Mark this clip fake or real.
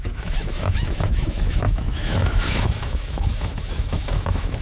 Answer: fake